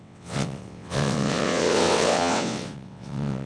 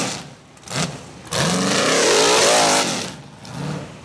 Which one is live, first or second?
second